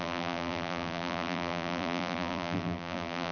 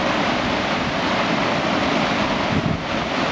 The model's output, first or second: first